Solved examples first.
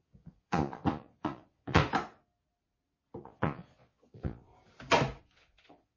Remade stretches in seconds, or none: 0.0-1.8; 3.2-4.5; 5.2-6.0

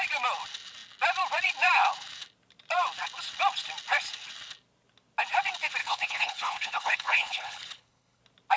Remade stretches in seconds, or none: 5.8-8.2

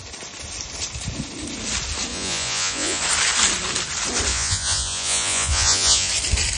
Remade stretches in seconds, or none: 2.1-3.0; 4.3-6.1

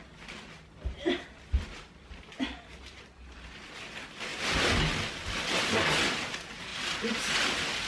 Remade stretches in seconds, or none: none